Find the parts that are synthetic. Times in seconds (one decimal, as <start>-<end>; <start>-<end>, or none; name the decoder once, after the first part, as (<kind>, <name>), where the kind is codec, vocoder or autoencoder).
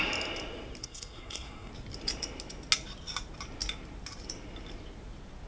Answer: 0.8-1.7 (codec, SNAC)